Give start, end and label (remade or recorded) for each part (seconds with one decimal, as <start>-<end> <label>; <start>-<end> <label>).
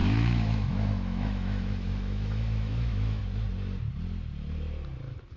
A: 0.0-3.2 remade; 3.2-5.4 recorded